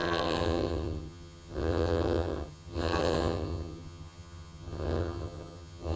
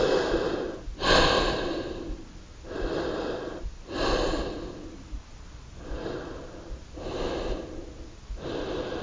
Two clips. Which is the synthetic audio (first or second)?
first